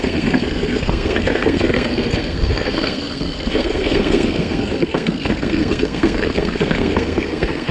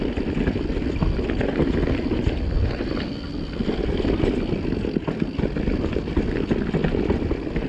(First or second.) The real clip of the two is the second